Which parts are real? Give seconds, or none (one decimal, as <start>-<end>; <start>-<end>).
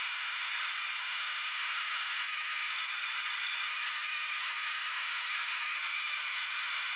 0.5-1.0; 2.9-3.7